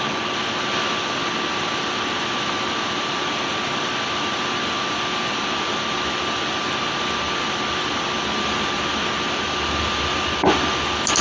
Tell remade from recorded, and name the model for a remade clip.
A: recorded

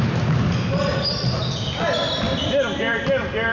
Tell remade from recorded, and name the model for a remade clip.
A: recorded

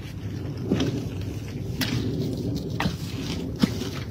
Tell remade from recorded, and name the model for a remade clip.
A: recorded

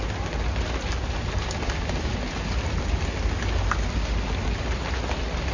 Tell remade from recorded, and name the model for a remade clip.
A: recorded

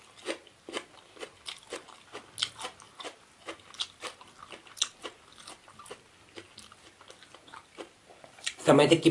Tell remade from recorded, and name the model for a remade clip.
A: recorded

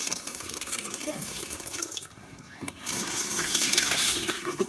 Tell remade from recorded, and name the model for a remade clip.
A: remade, codec, SNAC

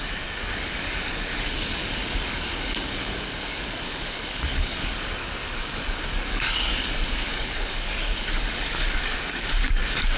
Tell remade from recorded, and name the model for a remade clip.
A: remade, codec, DAC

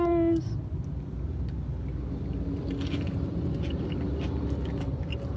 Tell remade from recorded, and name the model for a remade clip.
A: recorded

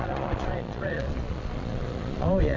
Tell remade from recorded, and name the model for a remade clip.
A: remade, vocoder, Vocos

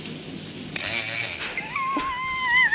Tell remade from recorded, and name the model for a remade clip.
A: recorded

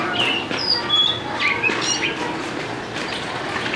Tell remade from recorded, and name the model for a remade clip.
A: recorded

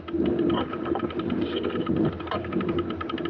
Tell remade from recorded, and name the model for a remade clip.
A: recorded